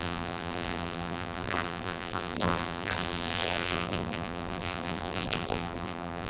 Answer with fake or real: fake